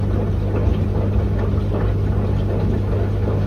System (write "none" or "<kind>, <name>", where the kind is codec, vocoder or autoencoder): none